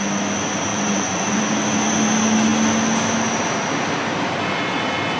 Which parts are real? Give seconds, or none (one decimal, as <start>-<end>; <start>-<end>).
0.0-0.7; 1.4-5.2